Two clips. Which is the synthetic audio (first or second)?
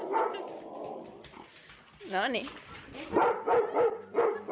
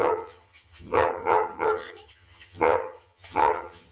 second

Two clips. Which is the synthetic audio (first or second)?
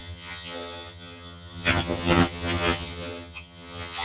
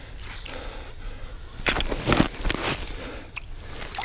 first